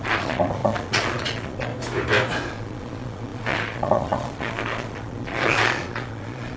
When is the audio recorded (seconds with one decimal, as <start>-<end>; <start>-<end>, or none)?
1.7-2.5